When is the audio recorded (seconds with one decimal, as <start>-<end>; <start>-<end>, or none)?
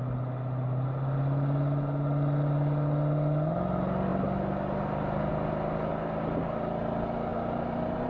0.0-7.3